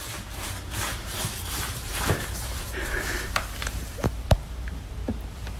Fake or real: fake